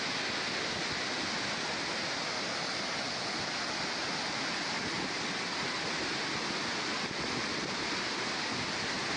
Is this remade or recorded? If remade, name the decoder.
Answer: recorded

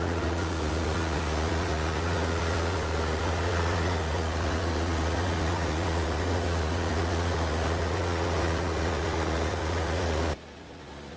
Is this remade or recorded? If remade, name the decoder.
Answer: remade, vocoder, Vocos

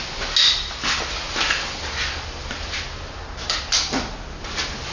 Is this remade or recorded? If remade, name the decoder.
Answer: recorded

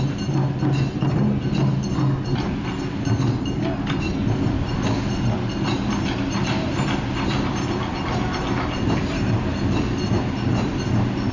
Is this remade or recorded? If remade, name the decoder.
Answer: recorded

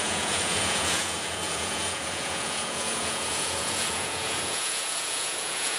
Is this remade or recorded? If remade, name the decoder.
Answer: remade, vocoder, Vocos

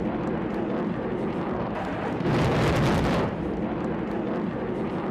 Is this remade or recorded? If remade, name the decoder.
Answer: recorded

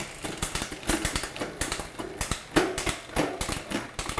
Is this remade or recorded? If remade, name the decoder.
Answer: recorded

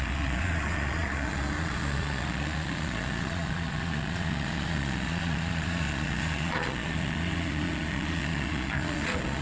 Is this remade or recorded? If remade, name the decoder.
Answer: remade, vocoder, Vocos